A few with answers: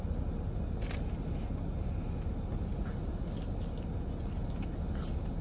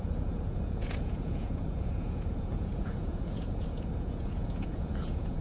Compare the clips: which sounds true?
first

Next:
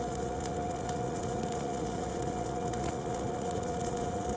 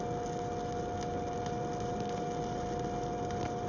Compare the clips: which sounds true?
second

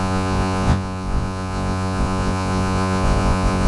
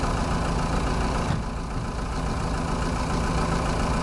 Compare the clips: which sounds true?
second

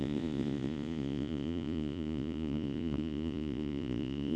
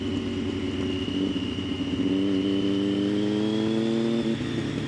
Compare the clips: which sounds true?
second